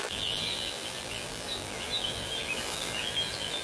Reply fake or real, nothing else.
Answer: fake